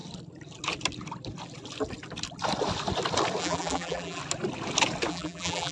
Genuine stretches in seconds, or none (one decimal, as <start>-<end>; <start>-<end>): 0.0-3.4; 4.2-5.1